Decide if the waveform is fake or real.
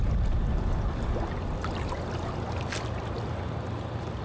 real